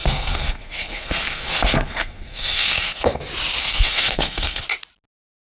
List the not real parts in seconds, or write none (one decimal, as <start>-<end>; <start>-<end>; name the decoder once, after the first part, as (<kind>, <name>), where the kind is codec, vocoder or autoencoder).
0.0-3.2 (codec, SNAC); 3.6-4.6